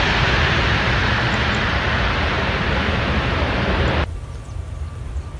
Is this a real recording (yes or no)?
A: no